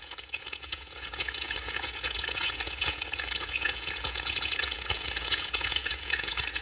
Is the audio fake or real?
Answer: fake